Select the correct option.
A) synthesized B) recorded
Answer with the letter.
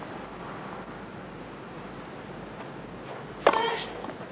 B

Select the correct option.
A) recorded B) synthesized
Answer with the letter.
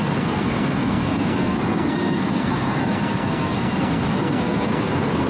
B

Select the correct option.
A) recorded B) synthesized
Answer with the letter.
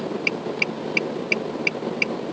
A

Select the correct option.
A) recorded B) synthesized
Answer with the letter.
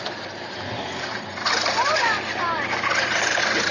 A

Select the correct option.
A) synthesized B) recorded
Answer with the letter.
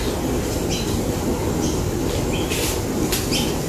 B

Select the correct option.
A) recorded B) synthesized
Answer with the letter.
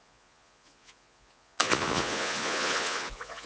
B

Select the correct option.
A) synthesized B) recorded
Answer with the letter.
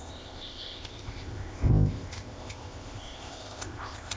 A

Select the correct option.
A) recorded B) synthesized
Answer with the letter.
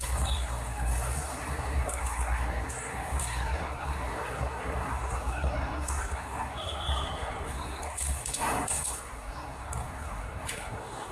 B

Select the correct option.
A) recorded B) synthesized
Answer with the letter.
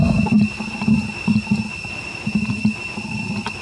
A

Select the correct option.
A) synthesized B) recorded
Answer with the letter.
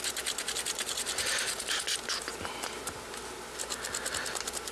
B